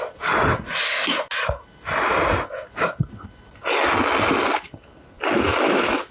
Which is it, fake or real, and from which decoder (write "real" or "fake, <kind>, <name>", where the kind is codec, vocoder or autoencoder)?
real